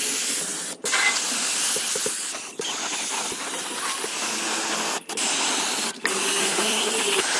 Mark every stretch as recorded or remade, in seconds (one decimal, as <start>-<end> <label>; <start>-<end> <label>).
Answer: 0.0-6.4 recorded; 6.4-6.9 remade; 6.9-7.4 recorded